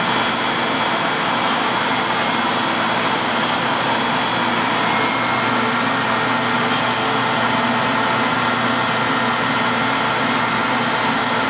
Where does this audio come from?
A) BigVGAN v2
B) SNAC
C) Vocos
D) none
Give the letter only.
D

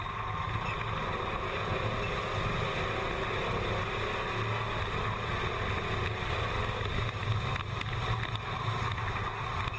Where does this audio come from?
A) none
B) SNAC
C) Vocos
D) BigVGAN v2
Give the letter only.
A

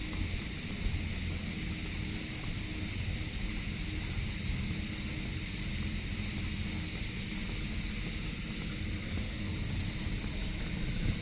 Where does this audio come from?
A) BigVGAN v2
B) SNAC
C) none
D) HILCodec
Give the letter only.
C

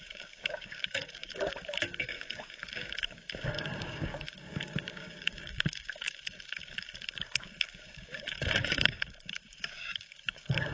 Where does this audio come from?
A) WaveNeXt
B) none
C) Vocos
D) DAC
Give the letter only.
D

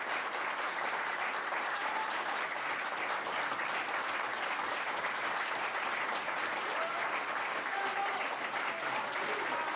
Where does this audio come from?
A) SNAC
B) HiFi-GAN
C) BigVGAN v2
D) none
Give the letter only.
D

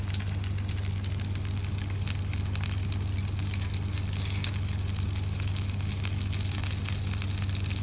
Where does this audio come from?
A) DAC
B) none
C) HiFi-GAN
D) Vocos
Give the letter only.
B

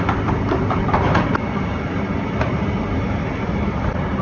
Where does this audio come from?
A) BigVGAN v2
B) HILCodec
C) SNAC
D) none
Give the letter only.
A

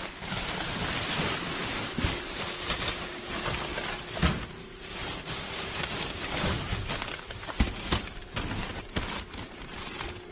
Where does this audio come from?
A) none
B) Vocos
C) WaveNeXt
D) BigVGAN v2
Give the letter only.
A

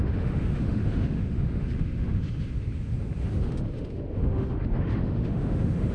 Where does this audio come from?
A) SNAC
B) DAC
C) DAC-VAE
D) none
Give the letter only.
C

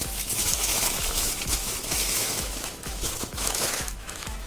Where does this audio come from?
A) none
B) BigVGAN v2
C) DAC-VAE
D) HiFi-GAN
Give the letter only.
C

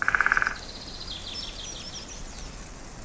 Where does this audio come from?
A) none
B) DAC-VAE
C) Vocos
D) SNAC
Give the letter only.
A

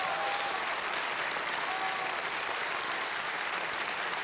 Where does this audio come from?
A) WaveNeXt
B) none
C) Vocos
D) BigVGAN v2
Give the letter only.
B